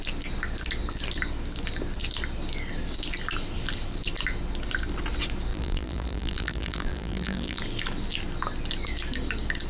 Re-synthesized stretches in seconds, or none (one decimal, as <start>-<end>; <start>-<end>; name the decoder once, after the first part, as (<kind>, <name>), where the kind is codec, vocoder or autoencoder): 5.5-7.6 (vocoder, BigVGAN v2)

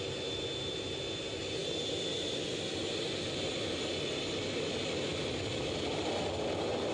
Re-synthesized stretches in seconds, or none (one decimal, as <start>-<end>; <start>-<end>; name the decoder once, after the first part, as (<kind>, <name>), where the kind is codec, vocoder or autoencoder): none

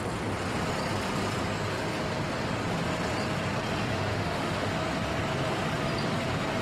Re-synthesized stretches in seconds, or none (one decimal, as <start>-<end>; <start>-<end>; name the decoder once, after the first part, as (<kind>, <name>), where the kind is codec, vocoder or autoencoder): 4.1-4.7 (autoencoder, DAC-VAE)

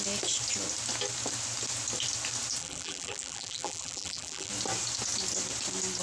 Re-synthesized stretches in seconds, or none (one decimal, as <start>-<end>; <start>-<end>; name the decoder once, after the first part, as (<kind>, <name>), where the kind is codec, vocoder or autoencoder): 2.6-4.5 (vocoder, BigVGAN v2)

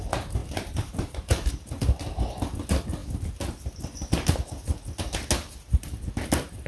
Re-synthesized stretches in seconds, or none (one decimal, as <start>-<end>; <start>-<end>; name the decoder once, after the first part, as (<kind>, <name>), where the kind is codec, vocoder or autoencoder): 0.4-1.5 (vocoder, BigVGAN v2)

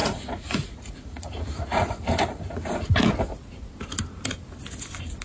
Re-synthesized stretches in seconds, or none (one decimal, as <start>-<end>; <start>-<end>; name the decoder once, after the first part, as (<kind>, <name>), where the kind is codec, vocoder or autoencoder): 0.0-3.1 (vocoder, Vocos)

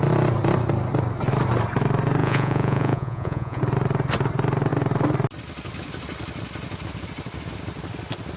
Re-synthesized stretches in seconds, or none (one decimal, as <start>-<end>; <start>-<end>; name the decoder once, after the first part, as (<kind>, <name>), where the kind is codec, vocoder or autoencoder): 2.2-3.6 (vocoder, Vocos)